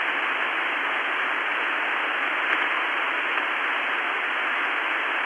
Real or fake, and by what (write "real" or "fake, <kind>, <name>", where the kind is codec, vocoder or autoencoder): real